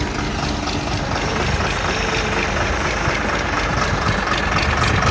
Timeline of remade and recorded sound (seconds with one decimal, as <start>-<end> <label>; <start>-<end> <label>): 0.0-1.3 recorded; 1.3-4.4 remade; 4.4-5.1 recorded